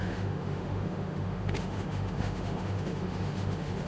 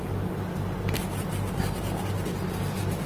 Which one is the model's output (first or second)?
first